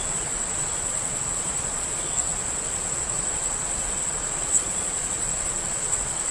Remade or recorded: remade